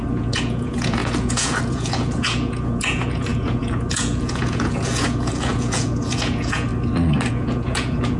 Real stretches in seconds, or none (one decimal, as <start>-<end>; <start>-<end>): 6.7-7.3